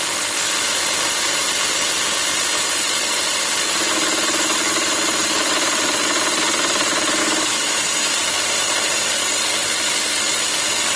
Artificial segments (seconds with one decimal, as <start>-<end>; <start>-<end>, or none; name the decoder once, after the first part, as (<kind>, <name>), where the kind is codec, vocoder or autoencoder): 7.2-8.1 (autoencoder, DAC-VAE)